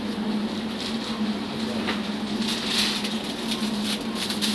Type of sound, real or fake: real